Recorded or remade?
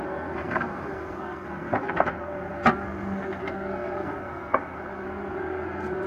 remade